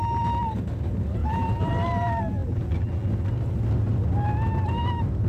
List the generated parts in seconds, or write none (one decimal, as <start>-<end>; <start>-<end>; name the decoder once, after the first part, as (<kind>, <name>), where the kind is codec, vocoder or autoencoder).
1.2-1.7 (vocoder, BigVGAN v2); 2.4-3.1